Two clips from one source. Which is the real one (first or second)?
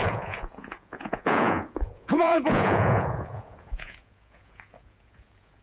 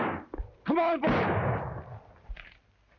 second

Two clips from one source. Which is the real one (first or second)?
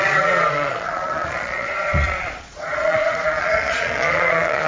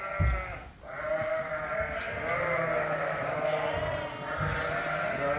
second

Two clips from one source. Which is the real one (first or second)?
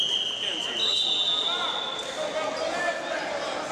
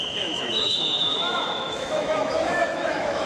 first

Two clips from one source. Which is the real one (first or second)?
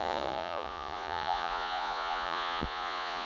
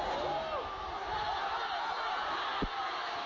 second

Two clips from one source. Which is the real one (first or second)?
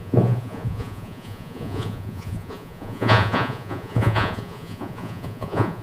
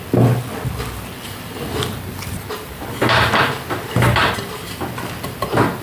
second